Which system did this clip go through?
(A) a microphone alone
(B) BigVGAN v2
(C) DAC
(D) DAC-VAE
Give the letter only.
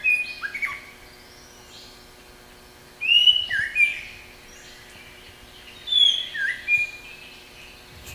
A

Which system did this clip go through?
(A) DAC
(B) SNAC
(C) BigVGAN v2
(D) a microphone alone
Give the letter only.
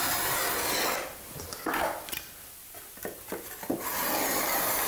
D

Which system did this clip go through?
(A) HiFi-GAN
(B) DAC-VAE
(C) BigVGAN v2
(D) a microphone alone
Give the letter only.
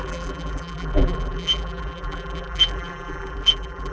C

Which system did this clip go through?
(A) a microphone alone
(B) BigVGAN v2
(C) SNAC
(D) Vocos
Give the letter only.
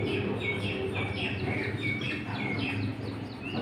A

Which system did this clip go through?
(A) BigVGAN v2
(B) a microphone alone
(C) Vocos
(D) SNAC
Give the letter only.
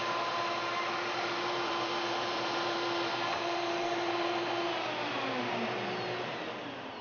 A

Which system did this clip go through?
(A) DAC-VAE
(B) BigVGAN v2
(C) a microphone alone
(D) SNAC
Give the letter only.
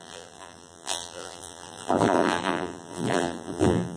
B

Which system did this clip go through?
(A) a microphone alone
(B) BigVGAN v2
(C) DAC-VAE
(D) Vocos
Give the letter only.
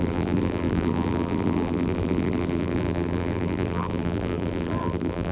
B